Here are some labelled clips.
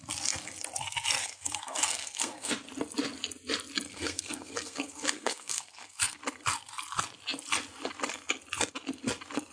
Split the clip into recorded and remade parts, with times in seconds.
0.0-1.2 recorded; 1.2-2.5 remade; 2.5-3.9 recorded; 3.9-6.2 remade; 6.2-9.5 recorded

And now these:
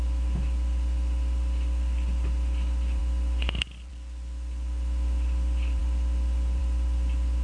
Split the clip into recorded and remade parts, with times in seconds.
0.0-7.4 recorded